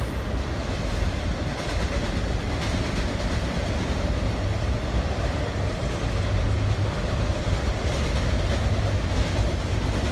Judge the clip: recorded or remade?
recorded